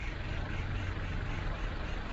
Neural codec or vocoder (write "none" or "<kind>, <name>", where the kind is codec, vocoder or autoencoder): vocoder, BigVGAN v2